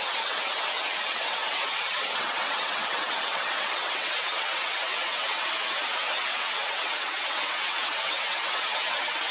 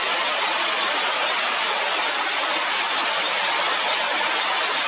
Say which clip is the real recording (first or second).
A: second